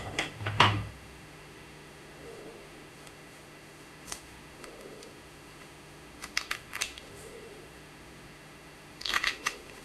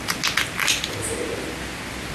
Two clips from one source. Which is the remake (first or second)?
first